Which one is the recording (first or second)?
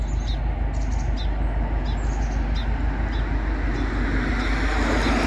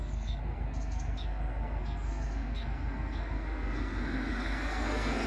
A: first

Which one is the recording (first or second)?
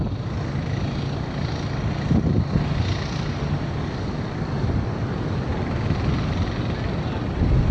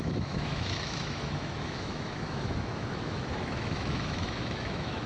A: first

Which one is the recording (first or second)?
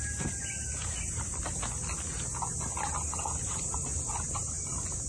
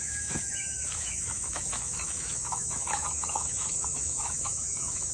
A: first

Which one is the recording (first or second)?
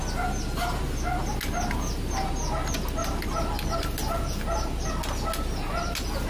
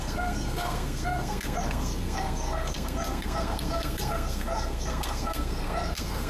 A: first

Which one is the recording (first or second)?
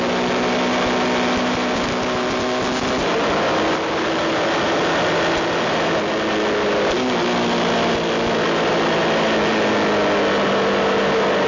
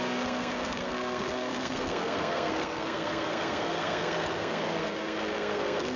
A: first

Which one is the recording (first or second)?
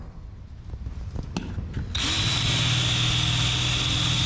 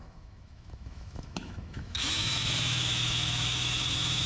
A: first